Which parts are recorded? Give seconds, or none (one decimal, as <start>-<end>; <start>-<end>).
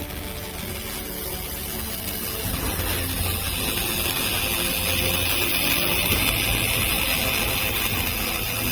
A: 0.0-8.7